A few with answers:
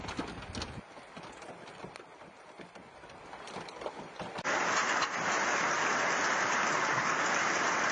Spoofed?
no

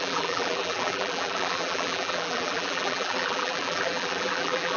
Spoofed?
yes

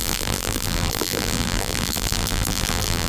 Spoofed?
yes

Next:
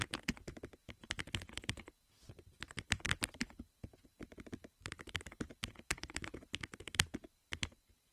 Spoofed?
yes